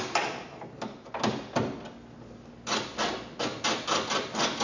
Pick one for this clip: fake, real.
real